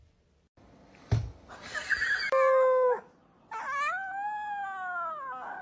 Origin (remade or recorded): recorded